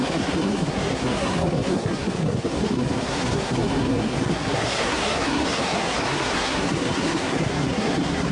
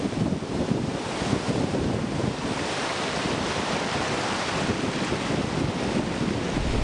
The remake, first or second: first